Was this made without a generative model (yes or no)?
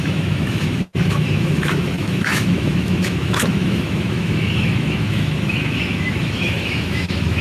no